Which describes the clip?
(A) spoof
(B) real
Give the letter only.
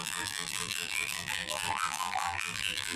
A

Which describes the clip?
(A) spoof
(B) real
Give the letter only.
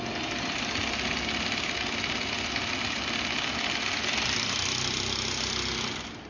B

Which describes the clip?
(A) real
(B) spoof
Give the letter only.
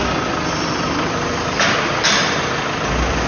A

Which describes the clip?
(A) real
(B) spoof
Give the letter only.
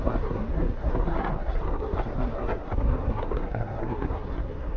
B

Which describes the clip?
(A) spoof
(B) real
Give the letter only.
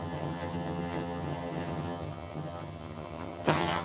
A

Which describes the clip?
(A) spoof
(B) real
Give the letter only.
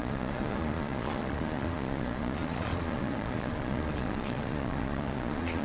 A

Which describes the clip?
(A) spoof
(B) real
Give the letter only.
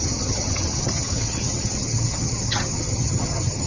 A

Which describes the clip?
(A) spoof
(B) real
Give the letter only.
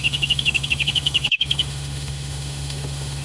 A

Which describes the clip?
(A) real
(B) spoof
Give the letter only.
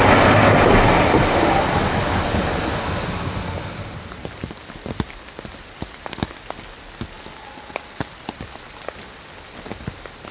A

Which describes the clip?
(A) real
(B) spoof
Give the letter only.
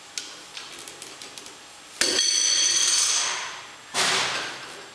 A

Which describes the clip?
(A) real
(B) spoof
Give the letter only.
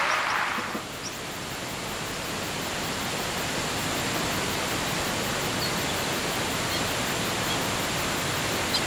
A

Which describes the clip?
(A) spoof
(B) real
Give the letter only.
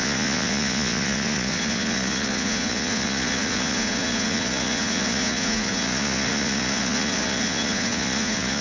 A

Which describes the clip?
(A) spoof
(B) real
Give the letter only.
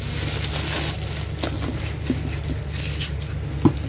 B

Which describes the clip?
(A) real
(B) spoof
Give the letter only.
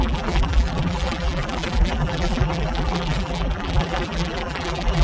B